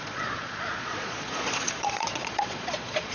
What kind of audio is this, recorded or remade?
remade